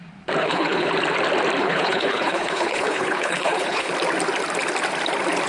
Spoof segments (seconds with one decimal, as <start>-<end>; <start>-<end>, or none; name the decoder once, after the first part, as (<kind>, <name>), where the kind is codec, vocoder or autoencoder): 0.4-0.9 (codec, HILCodec); 1.6-3.9

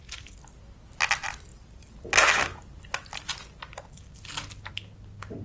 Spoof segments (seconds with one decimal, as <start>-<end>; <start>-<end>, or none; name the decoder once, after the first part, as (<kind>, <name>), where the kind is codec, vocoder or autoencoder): none

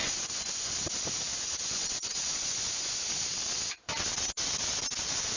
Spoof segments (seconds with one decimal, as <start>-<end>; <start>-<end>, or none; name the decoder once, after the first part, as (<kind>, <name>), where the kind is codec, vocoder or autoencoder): 0.0-0.7 (vocoder, Vocos); 1.3-3.0

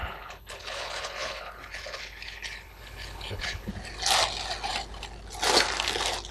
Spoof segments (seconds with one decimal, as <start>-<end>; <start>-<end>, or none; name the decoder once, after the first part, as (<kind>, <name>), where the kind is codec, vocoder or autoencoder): 0.0-3.7 (codec, HILCodec)

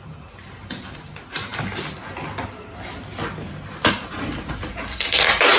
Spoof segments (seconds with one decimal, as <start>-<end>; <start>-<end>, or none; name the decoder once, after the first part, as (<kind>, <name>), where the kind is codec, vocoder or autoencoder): 0.0-1.5 (vocoder, BigVGAN v2); 3.9-5.6

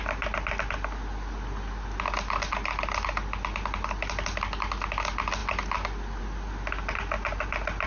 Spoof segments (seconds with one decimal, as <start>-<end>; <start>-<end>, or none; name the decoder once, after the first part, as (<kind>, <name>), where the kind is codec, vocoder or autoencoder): none

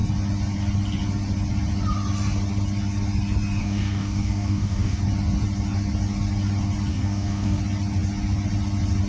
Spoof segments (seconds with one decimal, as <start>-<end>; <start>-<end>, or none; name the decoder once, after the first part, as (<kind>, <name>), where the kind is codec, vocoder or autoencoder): 3.6-5.0 (codec, DAC); 6.9-7.6